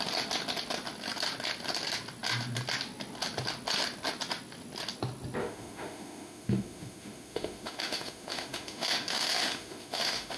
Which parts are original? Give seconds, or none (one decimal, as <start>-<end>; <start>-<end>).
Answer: 0.0-5.4